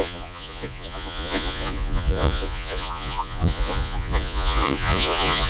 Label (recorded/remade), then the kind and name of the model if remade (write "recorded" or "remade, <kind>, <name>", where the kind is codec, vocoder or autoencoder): remade, vocoder, Vocos